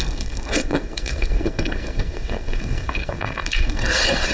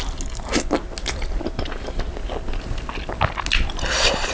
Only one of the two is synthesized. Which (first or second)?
first